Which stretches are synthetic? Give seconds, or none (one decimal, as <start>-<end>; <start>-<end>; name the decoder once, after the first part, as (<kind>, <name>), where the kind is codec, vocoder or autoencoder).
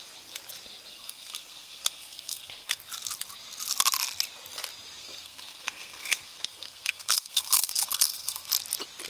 0.9-2.8 (codec, SNAC); 5.0-8.5